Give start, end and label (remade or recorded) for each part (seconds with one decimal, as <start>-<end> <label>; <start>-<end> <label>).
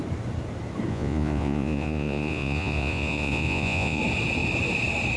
0.0-0.9 recorded; 0.9-4.0 remade; 4.0-5.2 recorded